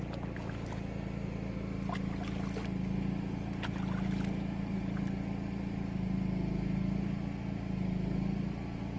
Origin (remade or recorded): recorded